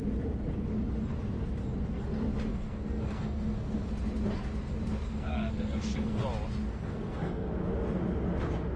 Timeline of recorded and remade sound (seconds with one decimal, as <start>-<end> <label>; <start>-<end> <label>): 0.0-2.5 recorded; 2.5-3.9 remade; 3.9-5.1 recorded; 5.1-6.2 remade; 6.2-6.7 recorded; 6.7-7.5 remade; 7.5-8.8 recorded